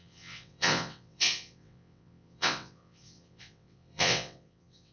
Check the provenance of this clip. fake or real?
fake